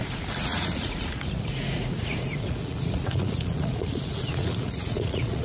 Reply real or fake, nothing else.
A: fake